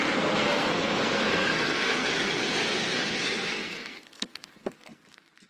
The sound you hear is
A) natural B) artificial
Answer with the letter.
B